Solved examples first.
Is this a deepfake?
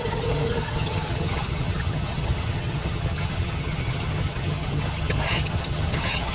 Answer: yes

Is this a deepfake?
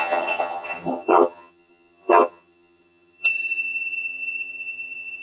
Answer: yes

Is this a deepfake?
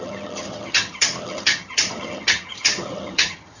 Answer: yes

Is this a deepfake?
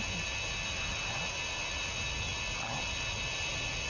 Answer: no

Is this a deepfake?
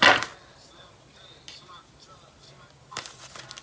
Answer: no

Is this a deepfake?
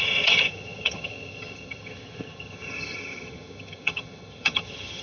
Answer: yes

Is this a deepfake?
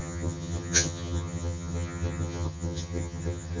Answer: yes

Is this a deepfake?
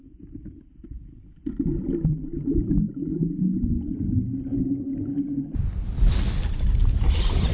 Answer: no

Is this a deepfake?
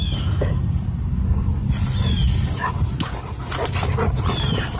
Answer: no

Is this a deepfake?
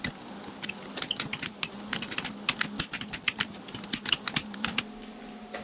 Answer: no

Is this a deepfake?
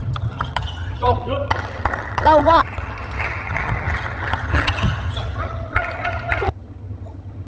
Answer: yes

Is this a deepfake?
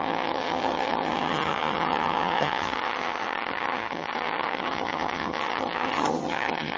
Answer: yes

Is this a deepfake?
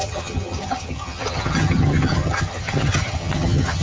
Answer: yes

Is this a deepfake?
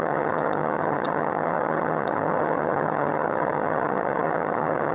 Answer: yes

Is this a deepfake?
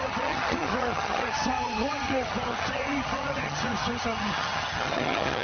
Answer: yes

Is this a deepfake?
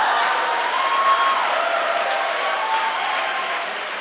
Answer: no